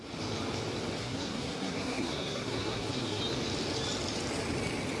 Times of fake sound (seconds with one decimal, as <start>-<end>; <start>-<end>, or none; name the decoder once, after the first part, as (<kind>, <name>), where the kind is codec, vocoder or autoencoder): 1.0-3.2 (codec, SNAC)